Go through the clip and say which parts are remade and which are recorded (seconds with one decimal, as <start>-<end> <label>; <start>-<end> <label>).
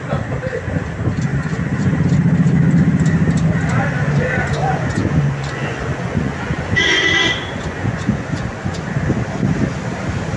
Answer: 0.0-1.3 recorded; 1.3-2.0 remade; 2.0-4.6 recorded; 4.6-9.0 remade; 9.0-10.4 recorded